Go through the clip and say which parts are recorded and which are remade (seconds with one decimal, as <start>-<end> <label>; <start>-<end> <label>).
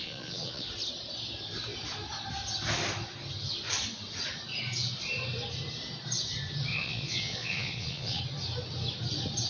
0.0-0.7 remade; 0.7-6.7 recorded; 6.7-8.2 remade; 8.2-9.5 recorded